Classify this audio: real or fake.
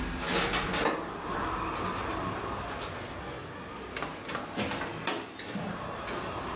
real